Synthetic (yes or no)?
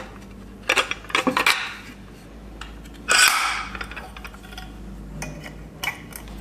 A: no